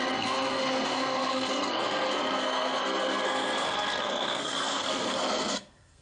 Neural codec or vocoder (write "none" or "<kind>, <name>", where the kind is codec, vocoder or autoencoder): codec, SNAC